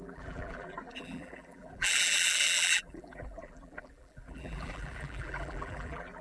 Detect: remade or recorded remade